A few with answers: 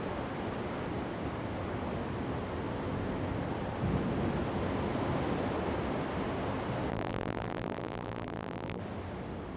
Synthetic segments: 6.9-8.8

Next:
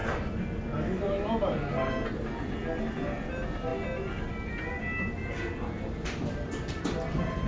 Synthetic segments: none

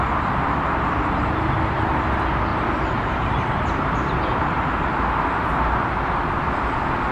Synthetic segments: 2.5-6.0

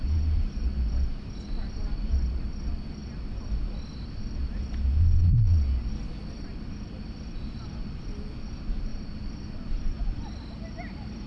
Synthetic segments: none